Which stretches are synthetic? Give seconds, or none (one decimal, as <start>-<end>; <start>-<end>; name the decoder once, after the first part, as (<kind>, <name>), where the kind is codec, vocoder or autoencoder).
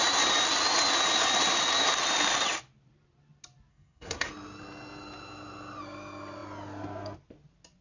3.7-4.3 (codec, SNAC)